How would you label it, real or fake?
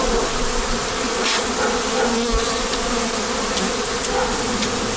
real